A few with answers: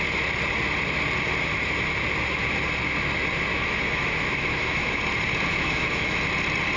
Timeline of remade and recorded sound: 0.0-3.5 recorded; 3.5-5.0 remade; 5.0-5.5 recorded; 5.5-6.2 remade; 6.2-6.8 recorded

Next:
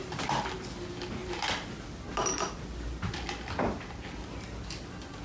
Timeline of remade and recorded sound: 0.0-5.2 recorded

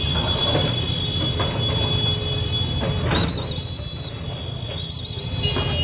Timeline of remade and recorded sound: 0.0-5.8 recorded

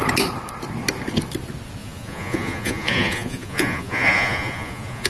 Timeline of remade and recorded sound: 0.0-1.8 recorded; 1.8-5.1 remade

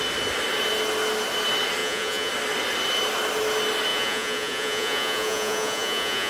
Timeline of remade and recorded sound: 0.0-1.8 recorded; 1.8-2.3 remade; 2.3-3.9 recorded; 3.9-6.3 remade

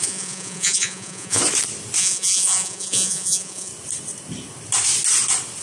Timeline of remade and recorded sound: 0.0-1.4 remade; 1.4-2.0 recorded; 2.0-3.7 remade; 3.7-5.6 recorded

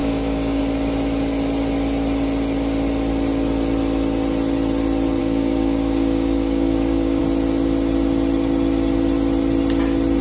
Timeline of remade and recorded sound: 0.0-0.6 remade; 0.6-5.2 recorded; 5.2-7.2 remade; 7.2-10.2 recorded